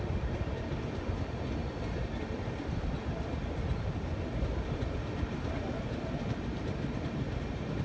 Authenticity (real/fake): real